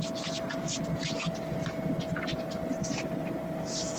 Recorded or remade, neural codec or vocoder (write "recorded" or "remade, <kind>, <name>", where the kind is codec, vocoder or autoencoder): recorded